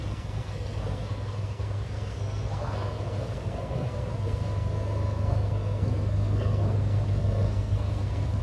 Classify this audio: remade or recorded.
remade